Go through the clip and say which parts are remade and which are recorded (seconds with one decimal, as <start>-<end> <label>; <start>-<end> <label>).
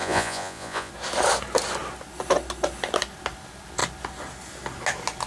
0.0-0.9 remade; 0.9-5.3 recorded